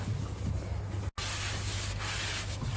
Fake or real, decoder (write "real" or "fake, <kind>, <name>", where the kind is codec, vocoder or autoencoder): real